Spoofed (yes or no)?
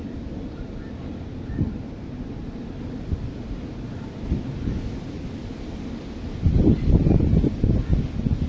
no